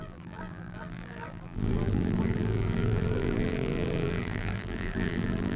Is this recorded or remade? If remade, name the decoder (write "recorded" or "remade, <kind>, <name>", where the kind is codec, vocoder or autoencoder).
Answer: remade, vocoder, BigVGAN v2